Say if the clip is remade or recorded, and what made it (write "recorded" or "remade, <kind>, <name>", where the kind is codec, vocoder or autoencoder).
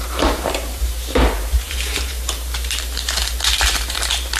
remade, vocoder, BigVGAN v2